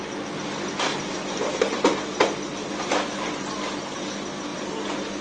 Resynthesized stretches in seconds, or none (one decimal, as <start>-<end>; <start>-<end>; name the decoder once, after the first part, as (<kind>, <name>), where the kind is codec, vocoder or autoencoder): 4.5-5.2 (vocoder, BigVGAN v2)